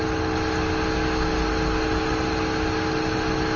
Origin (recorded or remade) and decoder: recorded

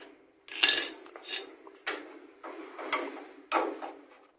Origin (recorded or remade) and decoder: recorded